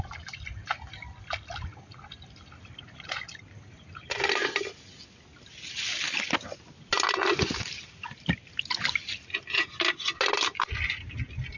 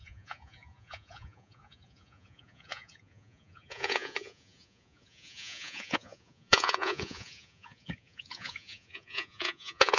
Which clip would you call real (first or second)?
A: first